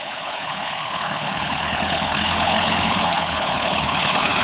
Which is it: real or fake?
fake